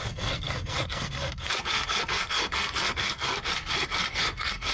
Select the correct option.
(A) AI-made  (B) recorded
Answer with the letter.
A